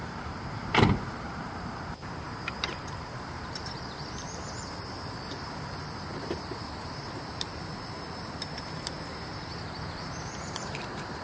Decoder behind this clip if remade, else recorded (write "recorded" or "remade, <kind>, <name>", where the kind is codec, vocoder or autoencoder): remade, vocoder, BigVGAN v2